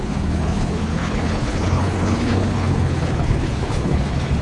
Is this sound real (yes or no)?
no